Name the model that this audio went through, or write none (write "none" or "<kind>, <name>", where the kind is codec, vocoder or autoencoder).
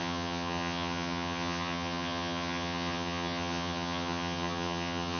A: vocoder, HiFi-GAN